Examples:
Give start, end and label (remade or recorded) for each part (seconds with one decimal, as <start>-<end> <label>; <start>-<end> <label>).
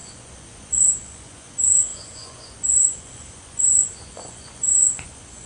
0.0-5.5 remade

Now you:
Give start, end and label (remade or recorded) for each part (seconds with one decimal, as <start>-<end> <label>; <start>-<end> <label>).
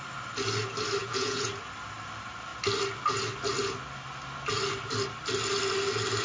0.0-1.0 recorded; 1.0-1.5 remade; 1.5-6.2 recorded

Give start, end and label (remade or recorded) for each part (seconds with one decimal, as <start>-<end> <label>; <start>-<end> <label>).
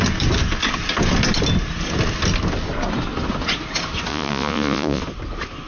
0.0-4.1 recorded; 4.1-5.0 remade; 5.0-5.7 recorded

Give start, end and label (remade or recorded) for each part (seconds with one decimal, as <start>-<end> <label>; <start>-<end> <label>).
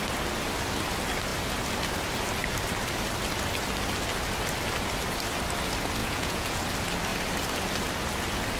0.0-6.0 recorded; 6.0-6.6 remade; 6.6-8.6 recorded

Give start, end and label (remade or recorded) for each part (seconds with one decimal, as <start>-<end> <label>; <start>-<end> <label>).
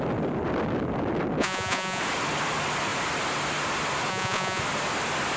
0.0-1.4 recorded; 1.4-2.0 remade; 2.0-4.1 recorded; 4.1-4.6 remade; 4.6-5.4 recorded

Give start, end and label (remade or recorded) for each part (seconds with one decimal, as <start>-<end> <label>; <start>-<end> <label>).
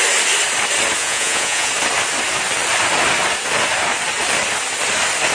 0.0-1.0 recorded; 1.0-1.7 remade; 1.7-5.3 recorded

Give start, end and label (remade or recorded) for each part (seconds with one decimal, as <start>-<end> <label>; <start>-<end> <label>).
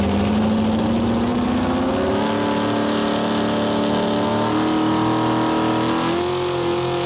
0.0-7.1 recorded